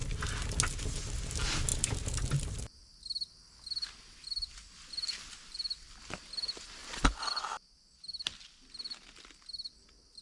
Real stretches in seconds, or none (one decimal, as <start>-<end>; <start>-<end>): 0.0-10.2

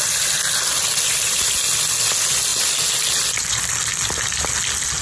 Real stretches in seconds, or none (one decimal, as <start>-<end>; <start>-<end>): 0.0-5.0

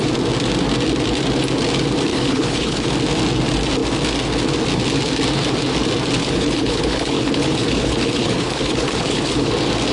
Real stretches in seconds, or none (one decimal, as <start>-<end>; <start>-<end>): 0.0-2.1; 2.9-6.2; 9.5-9.9

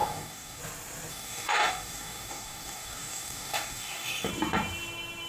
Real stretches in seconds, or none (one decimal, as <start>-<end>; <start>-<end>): 0.6-1.1; 4.3-5.3

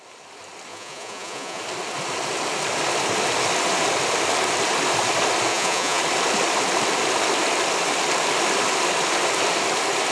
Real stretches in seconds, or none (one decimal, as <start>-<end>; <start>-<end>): 0.0-0.7; 1.6-5.5; 6.0-10.1

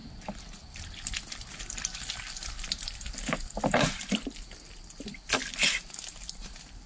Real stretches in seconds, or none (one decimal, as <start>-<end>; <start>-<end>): 0.0-6.9

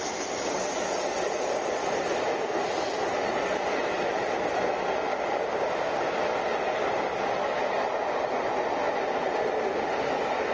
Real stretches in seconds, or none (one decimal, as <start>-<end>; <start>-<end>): 0.0-5.1; 6.1-10.5

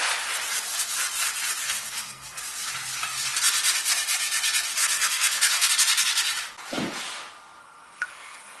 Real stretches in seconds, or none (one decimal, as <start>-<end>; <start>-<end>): 0.0-1.6; 2.4-4.8; 5.7-7.6